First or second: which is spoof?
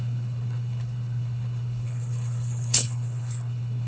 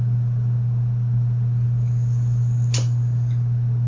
first